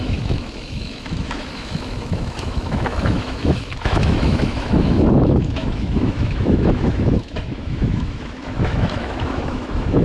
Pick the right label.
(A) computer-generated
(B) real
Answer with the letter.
A